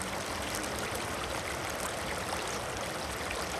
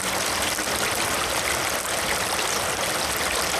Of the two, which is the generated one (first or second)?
first